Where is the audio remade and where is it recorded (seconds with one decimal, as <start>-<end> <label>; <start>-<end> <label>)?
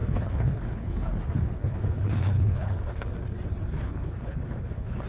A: 0.0-3.1 remade; 3.1-3.7 recorded; 3.7-5.1 remade